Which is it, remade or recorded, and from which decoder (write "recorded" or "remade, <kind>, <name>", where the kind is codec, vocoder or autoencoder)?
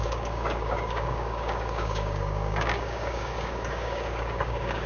remade, codec, DAC